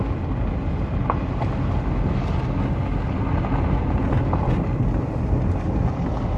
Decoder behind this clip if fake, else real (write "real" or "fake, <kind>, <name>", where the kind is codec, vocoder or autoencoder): real